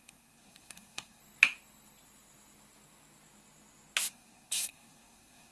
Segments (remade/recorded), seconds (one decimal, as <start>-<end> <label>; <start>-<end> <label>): 0.0-1.2 remade; 1.2-4.1 recorded; 4.1-5.5 remade